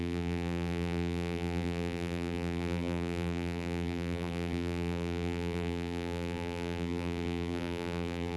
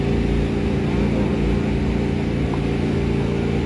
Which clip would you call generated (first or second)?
first